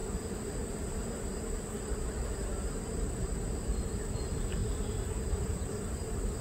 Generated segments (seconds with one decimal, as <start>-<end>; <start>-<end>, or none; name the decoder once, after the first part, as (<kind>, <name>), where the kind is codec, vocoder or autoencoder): 4.6-5.4 (vocoder, BigVGAN v2)